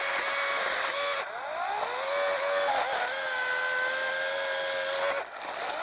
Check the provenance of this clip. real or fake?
real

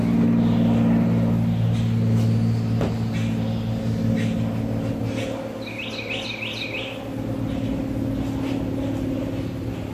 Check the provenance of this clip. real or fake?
real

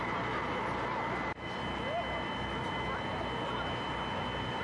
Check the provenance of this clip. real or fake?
real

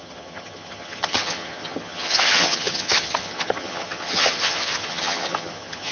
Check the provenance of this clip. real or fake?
fake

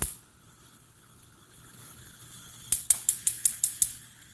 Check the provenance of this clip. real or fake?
fake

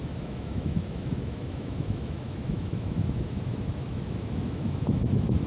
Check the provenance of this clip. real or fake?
fake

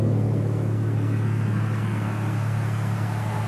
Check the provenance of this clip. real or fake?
fake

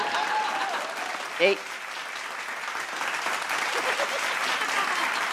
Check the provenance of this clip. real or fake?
real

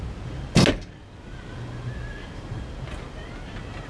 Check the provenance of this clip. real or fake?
real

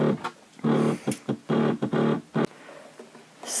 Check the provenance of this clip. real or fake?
real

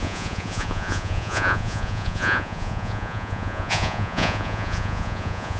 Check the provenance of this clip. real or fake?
fake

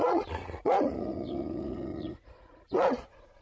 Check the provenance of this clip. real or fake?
fake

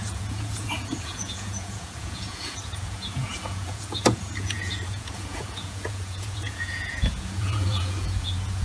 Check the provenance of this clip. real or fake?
fake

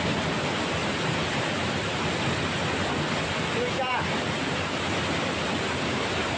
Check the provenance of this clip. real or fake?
real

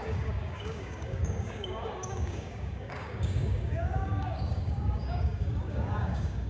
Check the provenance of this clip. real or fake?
fake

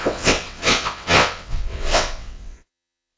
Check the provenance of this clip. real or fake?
fake